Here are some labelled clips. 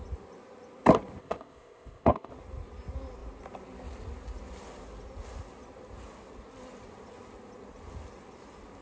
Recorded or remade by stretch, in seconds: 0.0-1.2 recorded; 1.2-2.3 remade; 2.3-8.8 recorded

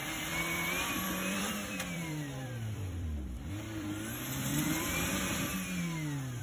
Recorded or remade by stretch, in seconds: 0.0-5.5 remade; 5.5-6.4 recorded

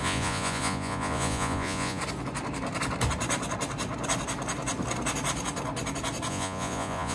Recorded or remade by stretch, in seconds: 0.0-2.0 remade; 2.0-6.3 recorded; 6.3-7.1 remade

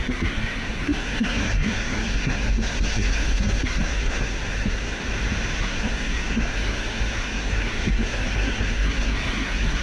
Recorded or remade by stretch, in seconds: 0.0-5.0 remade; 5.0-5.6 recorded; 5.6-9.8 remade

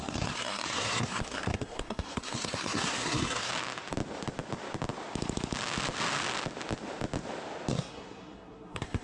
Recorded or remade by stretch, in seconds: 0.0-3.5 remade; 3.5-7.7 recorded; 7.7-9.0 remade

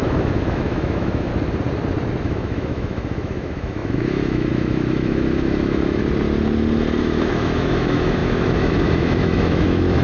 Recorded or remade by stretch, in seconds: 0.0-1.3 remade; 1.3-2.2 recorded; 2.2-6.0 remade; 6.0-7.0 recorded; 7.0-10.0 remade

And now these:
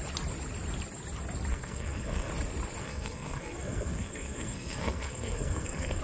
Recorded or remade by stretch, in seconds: 0.0-1.5 recorded; 1.5-2.3 remade; 2.3-2.8 recorded; 2.8-6.0 remade